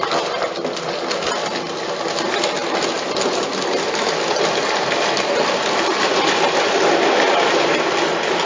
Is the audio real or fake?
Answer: real